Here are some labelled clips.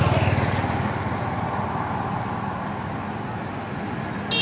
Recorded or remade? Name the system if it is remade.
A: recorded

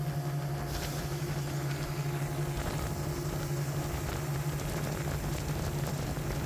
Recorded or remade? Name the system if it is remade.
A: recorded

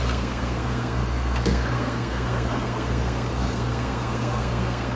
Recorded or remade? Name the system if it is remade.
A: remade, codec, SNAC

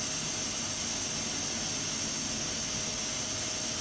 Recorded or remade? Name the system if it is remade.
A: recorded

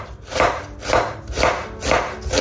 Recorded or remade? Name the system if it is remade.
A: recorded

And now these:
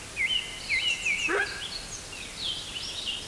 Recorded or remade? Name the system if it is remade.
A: recorded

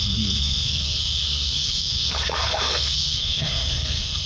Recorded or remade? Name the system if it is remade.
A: remade, codec, SNAC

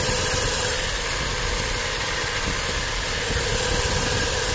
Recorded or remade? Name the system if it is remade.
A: recorded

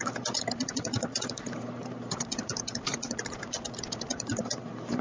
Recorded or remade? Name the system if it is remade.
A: remade, vocoder, BigVGAN v2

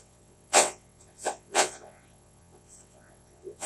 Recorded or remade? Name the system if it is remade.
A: remade, vocoder, WaveNeXt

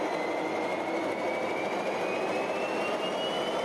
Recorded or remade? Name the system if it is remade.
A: recorded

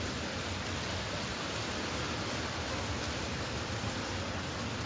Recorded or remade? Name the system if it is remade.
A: recorded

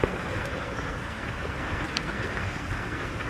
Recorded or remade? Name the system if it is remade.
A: remade, codec, SNAC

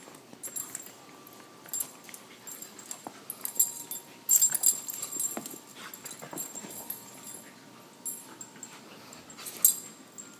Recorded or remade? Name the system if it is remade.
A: recorded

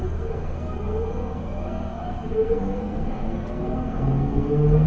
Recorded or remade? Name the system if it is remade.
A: remade, codec, SNAC